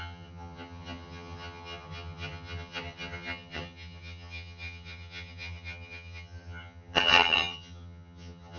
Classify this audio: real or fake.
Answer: fake